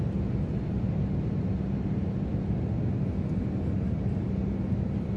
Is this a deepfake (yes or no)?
no